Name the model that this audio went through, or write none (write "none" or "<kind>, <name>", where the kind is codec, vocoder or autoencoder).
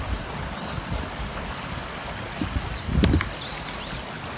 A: none